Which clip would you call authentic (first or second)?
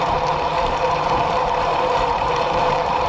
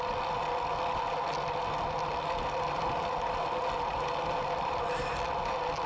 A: second